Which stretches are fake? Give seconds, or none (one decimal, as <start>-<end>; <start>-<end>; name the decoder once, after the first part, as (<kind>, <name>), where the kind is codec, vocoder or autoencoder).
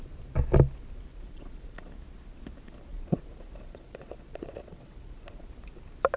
1.1-1.9 (vocoder, Vocos); 2.9-5.5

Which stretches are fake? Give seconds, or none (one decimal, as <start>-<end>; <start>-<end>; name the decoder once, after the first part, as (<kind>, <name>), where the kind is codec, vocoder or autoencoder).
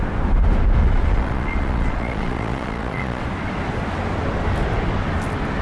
0.8-3.2 (vocoder, Vocos)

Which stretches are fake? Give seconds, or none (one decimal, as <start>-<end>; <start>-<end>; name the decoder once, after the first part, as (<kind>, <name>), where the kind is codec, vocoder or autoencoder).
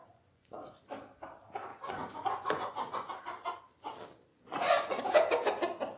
0.0-0.8 (vocoder, Vocos); 1.7-3.1; 4.3-5.0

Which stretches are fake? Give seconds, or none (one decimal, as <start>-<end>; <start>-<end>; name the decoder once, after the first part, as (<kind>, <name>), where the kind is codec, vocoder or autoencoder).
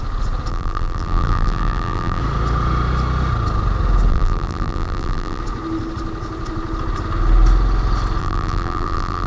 0.5-2.2 (vocoder, BigVGAN v2); 4.1-5.4; 8.2-9.3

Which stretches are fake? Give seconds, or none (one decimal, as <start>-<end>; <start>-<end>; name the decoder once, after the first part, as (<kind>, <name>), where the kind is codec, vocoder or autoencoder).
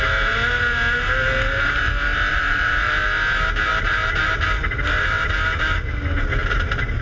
2.3-2.9 (vocoder, Vocos)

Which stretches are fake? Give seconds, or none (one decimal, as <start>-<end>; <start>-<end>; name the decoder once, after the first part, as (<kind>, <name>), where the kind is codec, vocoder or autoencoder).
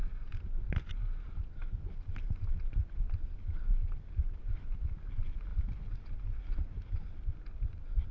none